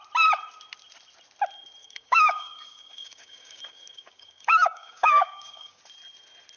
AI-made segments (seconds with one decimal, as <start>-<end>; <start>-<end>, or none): 1.8-5.8